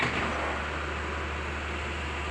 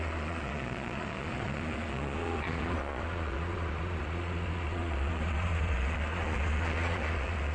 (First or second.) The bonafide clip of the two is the first